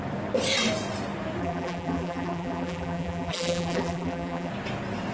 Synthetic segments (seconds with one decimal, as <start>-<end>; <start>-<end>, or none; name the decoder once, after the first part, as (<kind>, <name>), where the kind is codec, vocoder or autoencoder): 1.4-4.5 (vocoder, BigVGAN v2)